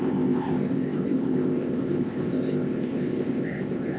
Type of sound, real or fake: fake